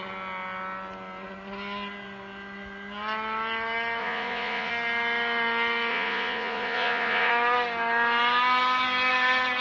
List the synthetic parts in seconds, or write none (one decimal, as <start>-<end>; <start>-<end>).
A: 4.0-4.7; 5.9-7.3

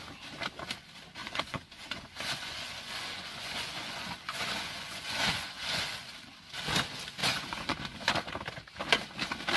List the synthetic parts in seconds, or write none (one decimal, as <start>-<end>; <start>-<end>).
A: 1.2-6.1; 7.2-8.1

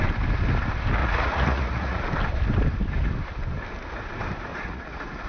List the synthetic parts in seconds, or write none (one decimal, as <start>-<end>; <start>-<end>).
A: 1.0-2.0; 4.5-5.3